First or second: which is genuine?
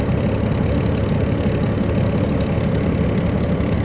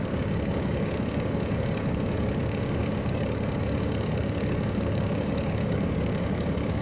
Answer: first